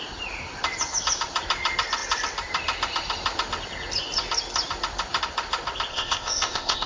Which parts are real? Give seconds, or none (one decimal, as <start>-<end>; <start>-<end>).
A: 0.0-5.9